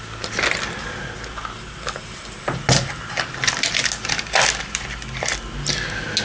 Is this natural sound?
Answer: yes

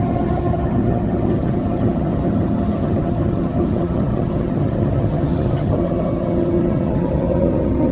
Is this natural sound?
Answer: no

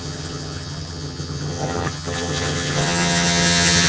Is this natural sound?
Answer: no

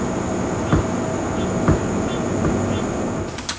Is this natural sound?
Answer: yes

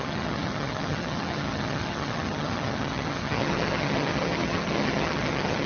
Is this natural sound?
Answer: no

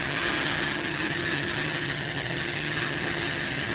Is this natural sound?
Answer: no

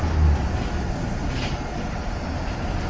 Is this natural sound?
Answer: yes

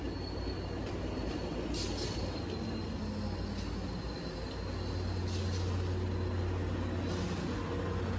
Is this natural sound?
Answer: yes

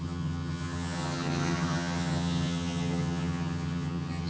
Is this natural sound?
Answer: no